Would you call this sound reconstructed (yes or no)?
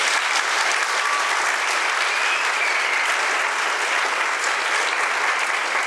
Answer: no